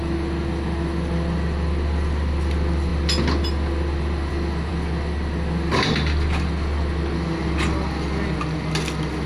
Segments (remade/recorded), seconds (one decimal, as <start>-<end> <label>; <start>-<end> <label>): 0.0-9.3 recorded